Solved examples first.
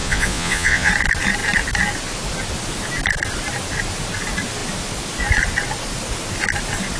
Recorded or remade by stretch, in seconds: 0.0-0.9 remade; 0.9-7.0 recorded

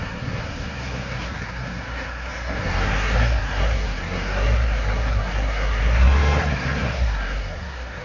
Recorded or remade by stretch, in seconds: 0.0-8.0 remade

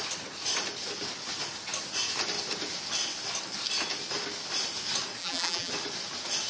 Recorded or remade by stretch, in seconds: 0.0-5.2 recorded; 5.2-5.7 remade; 5.7-6.5 recorded